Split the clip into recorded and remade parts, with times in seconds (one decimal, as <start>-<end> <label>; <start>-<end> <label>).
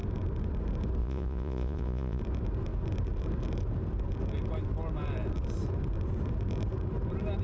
0.0-1.0 recorded; 1.0-2.2 remade; 2.2-7.4 recorded